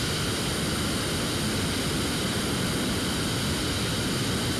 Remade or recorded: recorded